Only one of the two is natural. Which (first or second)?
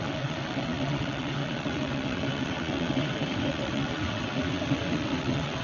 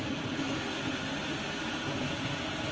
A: second